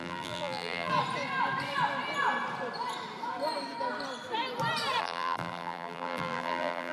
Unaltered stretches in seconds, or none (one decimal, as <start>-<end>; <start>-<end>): 0.9-5.0